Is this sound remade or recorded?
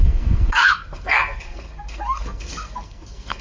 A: remade